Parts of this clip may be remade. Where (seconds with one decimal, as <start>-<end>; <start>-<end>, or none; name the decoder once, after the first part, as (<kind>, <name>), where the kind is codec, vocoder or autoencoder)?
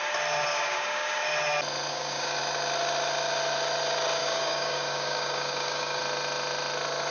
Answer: 0.5-1.2 (codec, DAC); 1.9-2.4; 4.2-6.0